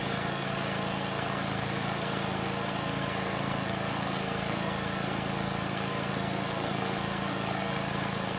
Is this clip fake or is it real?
fake